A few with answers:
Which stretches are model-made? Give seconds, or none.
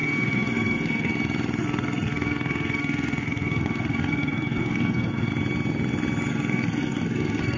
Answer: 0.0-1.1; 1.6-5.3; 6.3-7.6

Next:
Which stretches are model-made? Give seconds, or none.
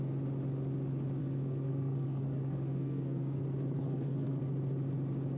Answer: 1.2-3.4; 3.8-4.4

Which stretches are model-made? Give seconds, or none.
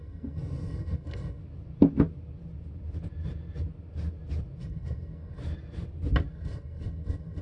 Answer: 0.0-1.4; 4.6-5.4; 6.3-7.4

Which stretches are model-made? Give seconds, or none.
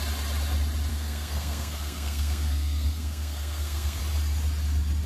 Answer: 0.9-4.0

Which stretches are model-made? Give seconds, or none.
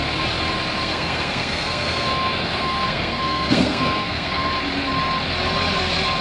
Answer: 0.8-4.5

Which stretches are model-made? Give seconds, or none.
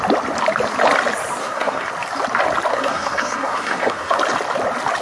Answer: 1.4-1.9; 2.7-4.2